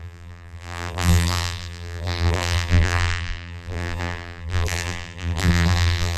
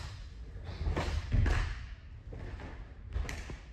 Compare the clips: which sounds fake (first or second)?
first